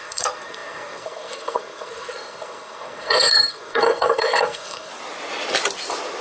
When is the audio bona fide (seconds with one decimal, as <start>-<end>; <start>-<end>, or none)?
4.9-6.2